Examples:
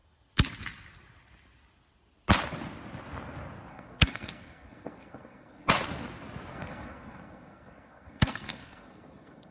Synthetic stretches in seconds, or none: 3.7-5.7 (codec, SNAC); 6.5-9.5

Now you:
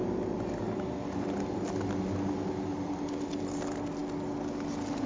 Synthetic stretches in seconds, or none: none

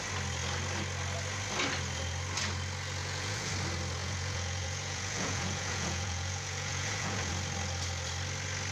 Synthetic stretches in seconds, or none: 3.0-3.5 (vocoder, Vocos); 4.0-7.3

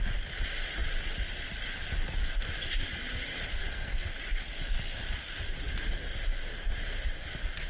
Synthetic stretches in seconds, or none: 3.6-4.2 (codec, SNAC)

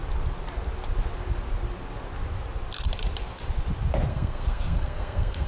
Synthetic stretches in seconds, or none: 4.1-5.5 (codec, SNAC)

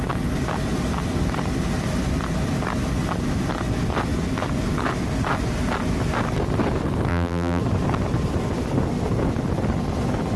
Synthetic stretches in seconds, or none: 7.1-7.6 (vocoder, BigVGAN v2)

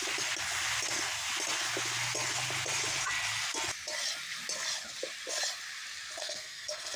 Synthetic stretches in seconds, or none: 6.2-7.0 (codec, SNAC)

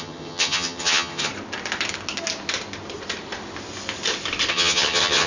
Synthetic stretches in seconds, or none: 0.0-1.3 (vocoder, HiFi-GAN); 4.5-5.3